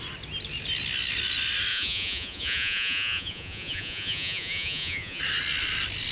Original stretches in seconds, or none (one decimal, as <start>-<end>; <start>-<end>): 0.0-1.7; 5.2-6.1